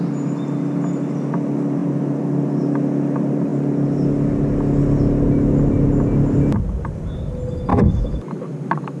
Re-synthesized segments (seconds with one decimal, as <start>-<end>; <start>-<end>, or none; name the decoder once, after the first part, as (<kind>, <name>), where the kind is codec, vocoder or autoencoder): 7.7-8.2 (autoencoder, DAC-VAE)